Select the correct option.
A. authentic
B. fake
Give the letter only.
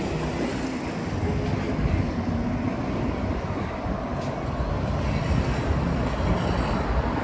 A